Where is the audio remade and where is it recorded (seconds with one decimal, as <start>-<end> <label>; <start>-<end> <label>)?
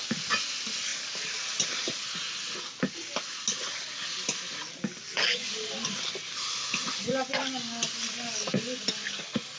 0.0-9.6 recorded